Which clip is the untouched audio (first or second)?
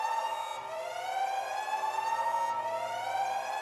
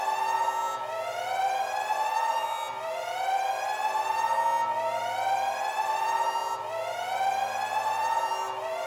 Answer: second